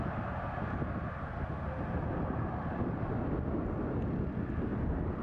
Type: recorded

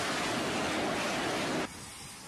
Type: recorded